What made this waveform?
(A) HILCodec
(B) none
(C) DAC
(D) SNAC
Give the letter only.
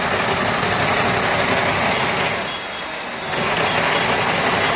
B